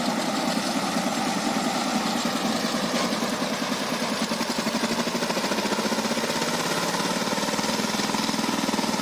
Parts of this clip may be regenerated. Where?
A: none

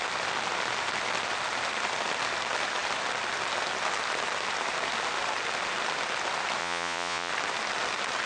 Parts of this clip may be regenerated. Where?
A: 6.6-7.3 (vocoder, Vocos)

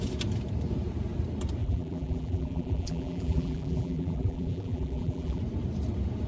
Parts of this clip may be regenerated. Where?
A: 1.6-5.4 (vocoder, BigVGAN v2)

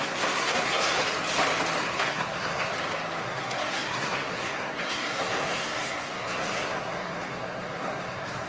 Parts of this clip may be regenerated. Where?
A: 0.0-1.0 (codec, SNAC); 1.8-2.7; 3.2-8.5

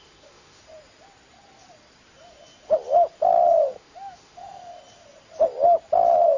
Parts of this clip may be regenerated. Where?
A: 0.0-0.6 (autoencoder, DAC-VAE); 3.7-4.7

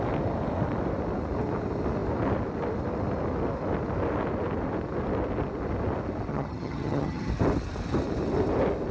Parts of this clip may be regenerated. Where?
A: 6.3-7.3 (vocoder, HiFi-GAN)

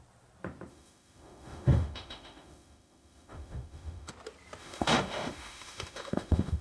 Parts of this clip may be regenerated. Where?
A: 0.7-4.1 (autoencoder, DAC-VAE); 4.6-6.6

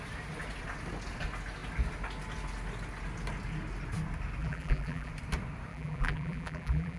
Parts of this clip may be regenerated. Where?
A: 4.4-5.1 (vocoder, BigVGAN v2); 5.7-7.0